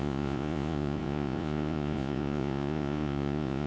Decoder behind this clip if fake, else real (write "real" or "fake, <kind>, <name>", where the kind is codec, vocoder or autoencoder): fake, vocoder, Vocos